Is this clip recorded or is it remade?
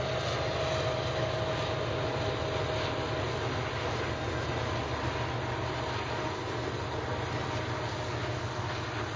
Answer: recorded